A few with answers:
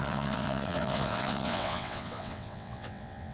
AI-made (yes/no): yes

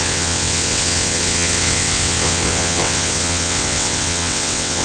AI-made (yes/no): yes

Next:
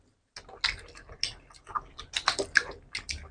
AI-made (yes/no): no